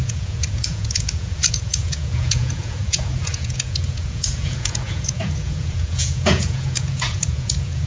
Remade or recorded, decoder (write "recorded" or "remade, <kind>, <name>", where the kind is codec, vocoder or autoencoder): remade, vocoder, Vocos